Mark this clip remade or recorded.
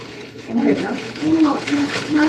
remade